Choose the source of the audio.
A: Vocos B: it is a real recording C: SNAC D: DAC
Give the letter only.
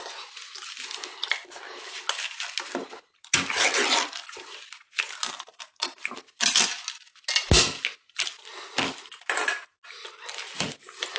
B